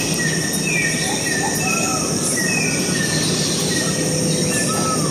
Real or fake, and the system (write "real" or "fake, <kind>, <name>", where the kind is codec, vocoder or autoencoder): real